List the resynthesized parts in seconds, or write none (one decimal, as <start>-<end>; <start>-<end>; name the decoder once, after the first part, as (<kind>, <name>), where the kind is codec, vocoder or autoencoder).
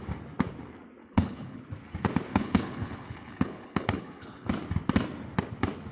1.0-1.6 (codec, HILCodec); 2.3-4.5